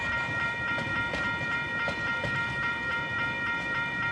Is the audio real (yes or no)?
no